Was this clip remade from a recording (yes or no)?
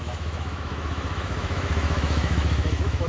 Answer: yes